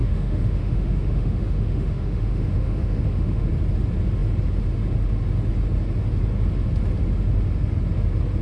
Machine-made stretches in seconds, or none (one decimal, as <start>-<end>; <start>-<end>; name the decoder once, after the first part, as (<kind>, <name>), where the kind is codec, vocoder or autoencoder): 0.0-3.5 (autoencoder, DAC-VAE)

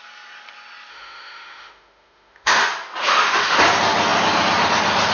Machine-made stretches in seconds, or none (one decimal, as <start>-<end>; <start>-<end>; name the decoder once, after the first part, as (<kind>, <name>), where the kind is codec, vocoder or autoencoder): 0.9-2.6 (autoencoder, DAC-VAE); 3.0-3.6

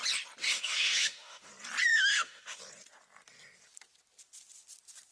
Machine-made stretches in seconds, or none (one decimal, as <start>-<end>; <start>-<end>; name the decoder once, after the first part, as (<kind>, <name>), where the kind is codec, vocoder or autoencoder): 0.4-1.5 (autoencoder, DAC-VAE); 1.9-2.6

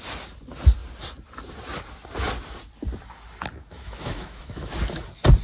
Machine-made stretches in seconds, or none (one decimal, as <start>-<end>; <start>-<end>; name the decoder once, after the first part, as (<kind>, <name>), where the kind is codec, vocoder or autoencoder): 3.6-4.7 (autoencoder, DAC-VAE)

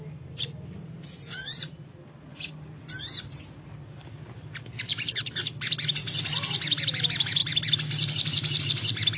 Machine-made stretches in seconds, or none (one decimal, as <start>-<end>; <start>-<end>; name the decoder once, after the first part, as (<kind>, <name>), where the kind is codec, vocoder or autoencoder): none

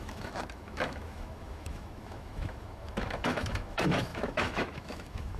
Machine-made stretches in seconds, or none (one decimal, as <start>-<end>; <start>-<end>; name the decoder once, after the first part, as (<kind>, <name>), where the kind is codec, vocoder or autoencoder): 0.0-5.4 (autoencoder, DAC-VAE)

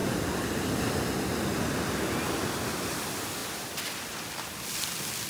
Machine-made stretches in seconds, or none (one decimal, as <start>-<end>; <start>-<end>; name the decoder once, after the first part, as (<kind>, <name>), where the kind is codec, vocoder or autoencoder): none

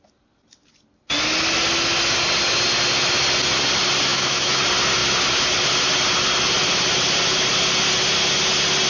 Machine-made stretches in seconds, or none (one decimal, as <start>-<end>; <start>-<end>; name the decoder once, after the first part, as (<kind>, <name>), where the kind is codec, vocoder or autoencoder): 4.1-4.6 (autoencoder, DAC-VAE)